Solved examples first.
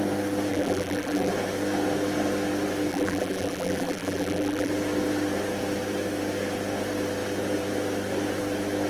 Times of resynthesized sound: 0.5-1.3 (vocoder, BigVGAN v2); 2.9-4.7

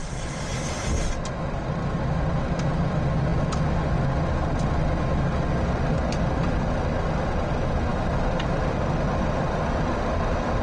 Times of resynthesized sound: 0.0-0.5 (vocoder, BigVGAN v2); 7.9-10.6